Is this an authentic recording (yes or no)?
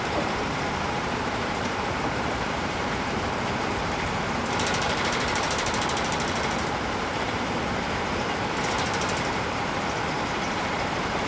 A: no